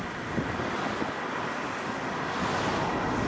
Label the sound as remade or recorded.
recorded